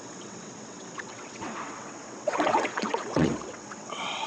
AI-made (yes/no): yes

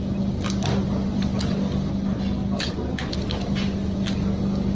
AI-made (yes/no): no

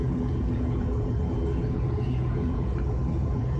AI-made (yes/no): yes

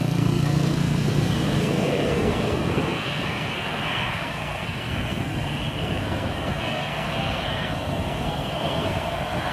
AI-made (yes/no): yes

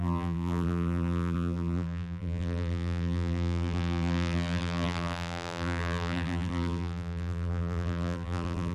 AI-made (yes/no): yes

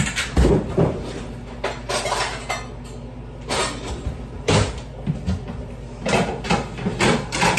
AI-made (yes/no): no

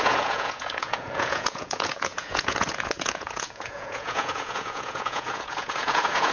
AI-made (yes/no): yes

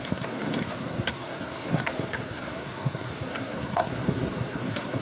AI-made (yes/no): yes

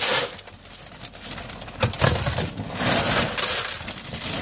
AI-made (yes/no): no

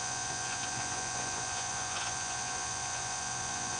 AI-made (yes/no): yes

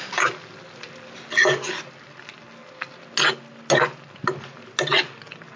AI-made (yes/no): no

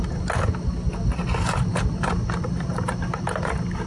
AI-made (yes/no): no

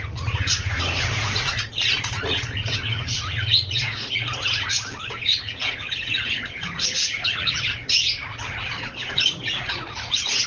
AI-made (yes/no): yes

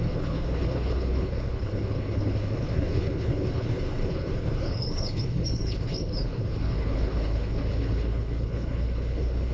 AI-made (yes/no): yes